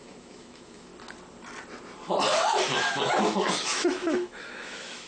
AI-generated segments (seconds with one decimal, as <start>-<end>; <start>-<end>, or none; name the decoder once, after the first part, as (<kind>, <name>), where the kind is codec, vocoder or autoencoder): 0.0-0.9 (autoencoder, DAC-VAE); 2.7-5.1